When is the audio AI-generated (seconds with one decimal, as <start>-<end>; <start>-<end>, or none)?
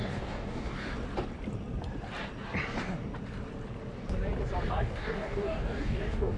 0.0-0.9; 4.7-6.4